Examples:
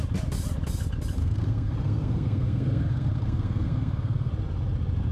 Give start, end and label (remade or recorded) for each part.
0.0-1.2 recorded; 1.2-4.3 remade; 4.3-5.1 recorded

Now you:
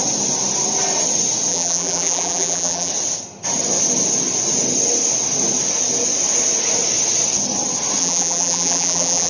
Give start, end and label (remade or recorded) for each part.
0.0-1.5 recorded; 1.5-2.9 remade; 2.9-8.0 recorded; 8.0-9.3 remade

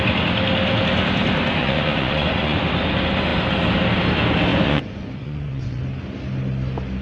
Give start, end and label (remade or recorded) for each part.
0.0-1.6 recorded; 1.6-2.6 remade; 2.6-4.5 recorded; 4.5-5.8 remade; 5.8-7.0 recorded

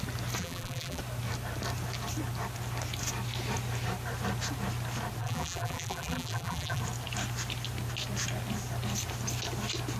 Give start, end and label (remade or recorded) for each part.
0.0-0.4 recorded; 0.4-1.0 remade; 1.0-5.2 recorded; 5.2-6.8 remade; 6.8-10.0 recorded

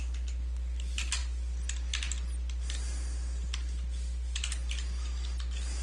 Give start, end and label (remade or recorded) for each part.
0.0-5.8 recorded